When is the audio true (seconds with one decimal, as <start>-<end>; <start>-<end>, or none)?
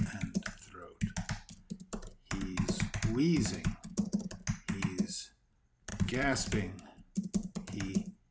0.0-5.9; 6.4-8.3